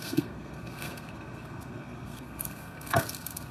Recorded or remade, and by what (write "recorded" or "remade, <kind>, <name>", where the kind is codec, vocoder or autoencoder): remade, codec, SNAC